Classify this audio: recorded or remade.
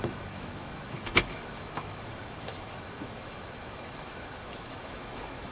remade